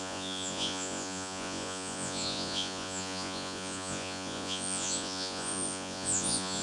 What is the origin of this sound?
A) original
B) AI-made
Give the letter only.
B